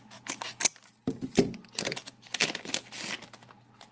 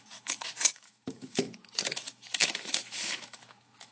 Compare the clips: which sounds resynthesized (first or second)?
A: second